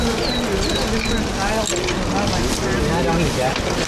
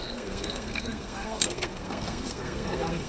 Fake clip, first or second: second